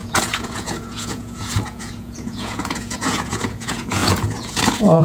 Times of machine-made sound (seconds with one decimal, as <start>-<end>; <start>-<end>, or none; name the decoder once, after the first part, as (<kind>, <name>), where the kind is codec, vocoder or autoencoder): 0.0-5.0 (vocoder, Vocos)